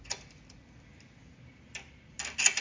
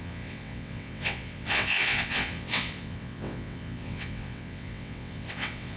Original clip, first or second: first